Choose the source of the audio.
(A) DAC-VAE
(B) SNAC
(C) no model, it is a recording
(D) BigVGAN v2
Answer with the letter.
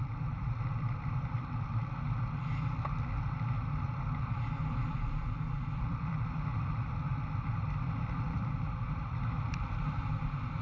D